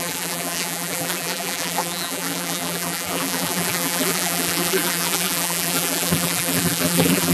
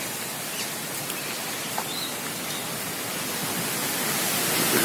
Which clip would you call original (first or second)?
second